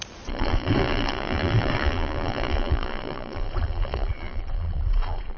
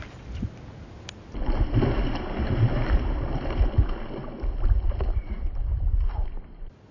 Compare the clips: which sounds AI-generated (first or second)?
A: first